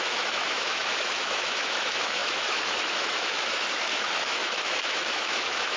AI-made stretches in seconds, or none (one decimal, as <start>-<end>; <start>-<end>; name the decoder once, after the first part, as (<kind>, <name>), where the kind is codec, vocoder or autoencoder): 0.0-5.8 (autoencoder, DAC-VAE)